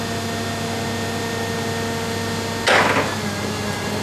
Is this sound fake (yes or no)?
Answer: no